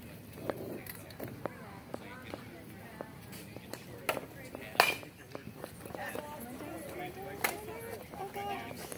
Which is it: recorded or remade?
recorded